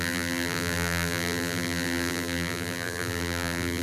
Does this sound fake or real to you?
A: fake